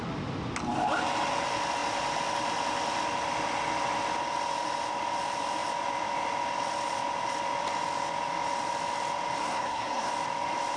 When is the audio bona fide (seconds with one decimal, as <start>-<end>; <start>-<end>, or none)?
0.0-9.4; 10.1-10.8